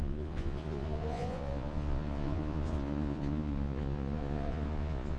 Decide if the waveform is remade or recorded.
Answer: remade